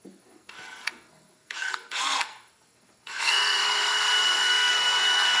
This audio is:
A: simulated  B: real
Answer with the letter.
A